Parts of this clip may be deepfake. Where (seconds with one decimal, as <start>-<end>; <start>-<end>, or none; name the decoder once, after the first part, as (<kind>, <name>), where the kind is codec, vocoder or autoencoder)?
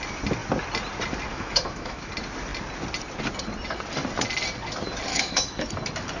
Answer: 1.3-2.1 (autoencoder, DAC-VAE); 5.1-5.7